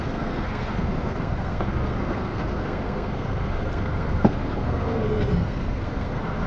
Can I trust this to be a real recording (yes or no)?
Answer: no